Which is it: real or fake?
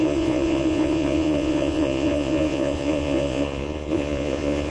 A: fake